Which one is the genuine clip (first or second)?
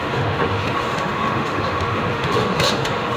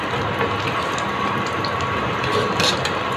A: second